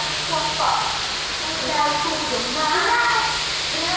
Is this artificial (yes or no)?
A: no